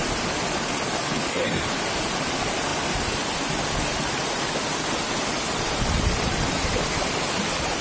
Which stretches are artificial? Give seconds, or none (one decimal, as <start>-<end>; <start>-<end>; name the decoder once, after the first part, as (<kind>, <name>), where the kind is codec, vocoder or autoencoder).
none